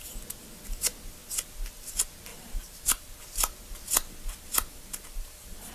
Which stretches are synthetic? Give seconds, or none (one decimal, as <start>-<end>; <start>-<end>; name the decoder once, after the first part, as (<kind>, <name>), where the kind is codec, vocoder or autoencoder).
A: 2.3-3.2 (vocoder, BigVGAN v2); 4.7-5.7